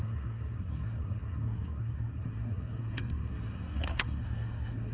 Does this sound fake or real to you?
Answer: fake